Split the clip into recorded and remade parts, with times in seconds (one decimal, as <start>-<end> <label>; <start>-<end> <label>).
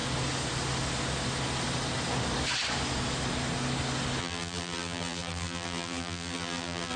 0.0-4.2 recorded; 4.2-7.0 remade